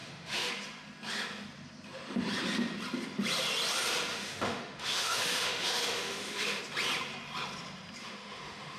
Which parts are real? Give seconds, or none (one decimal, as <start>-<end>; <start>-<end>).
0.5-4.1; 6.6-8.0